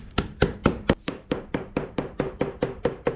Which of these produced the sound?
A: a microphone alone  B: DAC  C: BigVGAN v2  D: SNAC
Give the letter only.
C